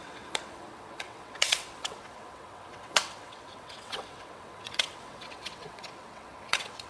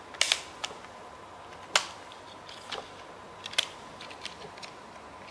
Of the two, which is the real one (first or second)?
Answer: second